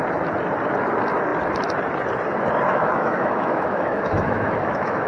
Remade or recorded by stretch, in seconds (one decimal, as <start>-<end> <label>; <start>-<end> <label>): 0.0-2.7 recorded; 2.7-5.1 remade